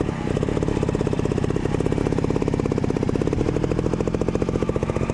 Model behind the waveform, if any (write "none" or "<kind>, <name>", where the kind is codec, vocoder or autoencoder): vocoder, BigVGAN v2